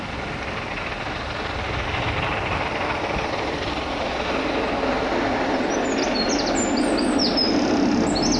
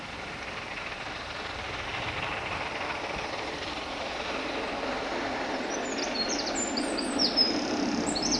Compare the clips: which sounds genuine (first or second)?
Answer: first